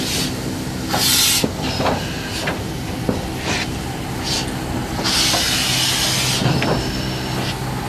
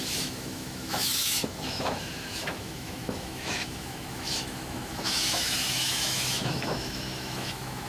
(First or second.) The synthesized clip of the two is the second